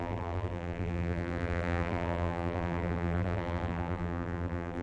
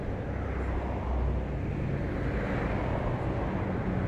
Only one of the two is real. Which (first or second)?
second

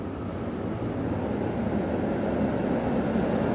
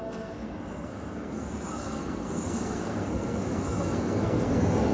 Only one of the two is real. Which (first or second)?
first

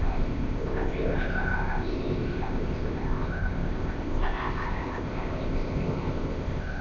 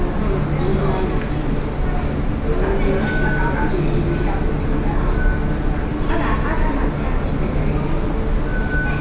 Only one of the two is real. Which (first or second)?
second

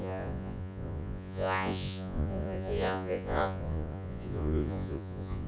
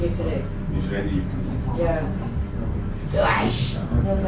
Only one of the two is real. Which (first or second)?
second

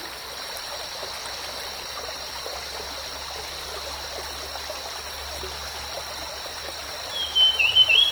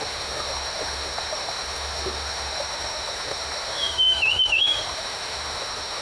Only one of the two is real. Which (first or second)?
first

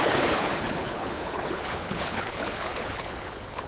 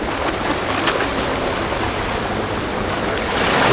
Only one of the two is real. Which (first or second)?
second